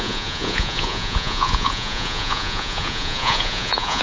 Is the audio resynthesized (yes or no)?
yes